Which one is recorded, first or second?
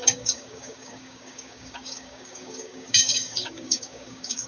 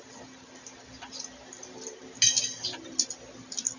second